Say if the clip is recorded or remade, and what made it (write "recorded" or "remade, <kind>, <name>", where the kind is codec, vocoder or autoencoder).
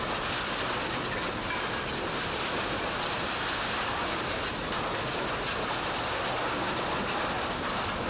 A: recorded